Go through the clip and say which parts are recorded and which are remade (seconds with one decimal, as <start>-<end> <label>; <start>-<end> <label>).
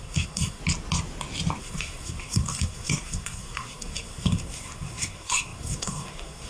0.0-0.6 remade; 0.6-1.6 recorded; 1.6-6.5 remade